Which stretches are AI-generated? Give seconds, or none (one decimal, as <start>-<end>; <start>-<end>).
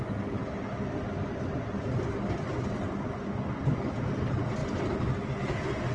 none